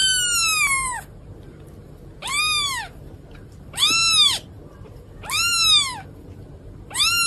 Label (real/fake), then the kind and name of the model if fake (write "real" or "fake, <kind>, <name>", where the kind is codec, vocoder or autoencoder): real